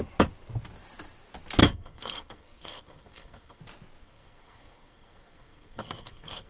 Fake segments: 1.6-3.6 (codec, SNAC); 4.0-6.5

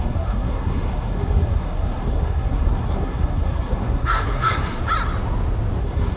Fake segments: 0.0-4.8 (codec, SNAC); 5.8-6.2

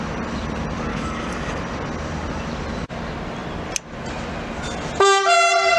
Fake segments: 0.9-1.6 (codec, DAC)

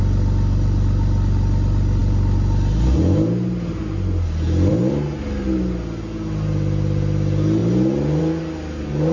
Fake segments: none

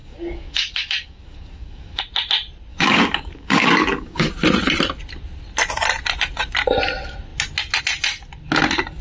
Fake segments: 0.0-2.0 (codec, DAC); 2.7-4.3